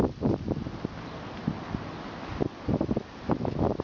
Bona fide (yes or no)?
yes